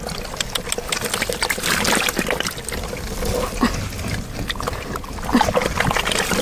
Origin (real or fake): real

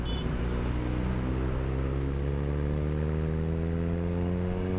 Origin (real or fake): real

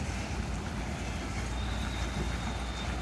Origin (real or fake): real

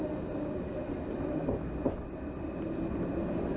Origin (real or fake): real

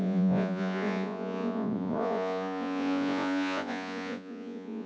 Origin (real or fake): fake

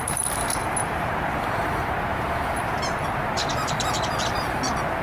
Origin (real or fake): fake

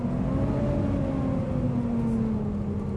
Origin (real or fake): real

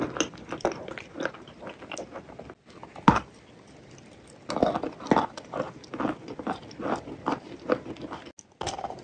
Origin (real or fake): real